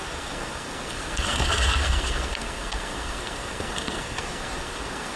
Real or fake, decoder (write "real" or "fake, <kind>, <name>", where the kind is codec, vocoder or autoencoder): fake, codec, SNAC